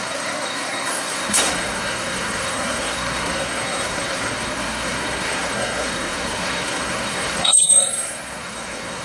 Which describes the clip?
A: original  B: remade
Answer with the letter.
B